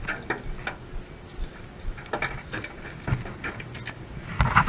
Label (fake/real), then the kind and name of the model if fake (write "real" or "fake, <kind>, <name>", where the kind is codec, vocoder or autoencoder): real